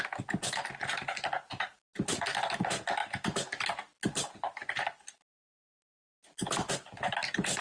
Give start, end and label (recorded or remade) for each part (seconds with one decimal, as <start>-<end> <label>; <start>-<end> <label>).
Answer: 0.0-7.6 recorded